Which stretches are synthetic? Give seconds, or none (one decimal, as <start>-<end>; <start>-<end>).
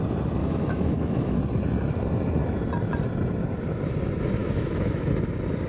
0.4-1.4; 4.4-5.1